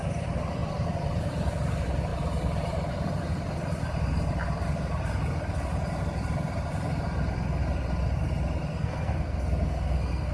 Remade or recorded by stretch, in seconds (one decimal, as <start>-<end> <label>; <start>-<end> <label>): 0.0-8.7 recorded; 8.7-10.3 remade